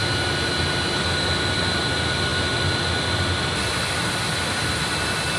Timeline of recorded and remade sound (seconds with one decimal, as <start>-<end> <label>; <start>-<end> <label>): 0.0-5.4 recorded